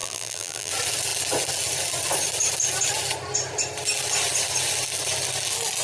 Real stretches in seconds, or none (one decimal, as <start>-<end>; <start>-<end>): 0.7-5.8